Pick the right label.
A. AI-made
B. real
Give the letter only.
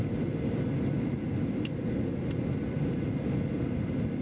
B